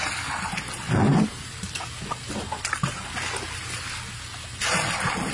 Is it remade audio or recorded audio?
recorded